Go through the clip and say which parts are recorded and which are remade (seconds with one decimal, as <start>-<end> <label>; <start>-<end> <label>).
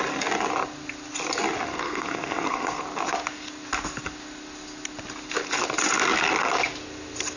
0.0-1.7 recorded; 1.7-2.8 remade; 2.8-7.4 recorded